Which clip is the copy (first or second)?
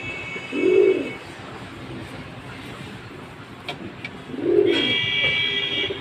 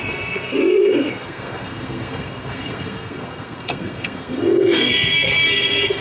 second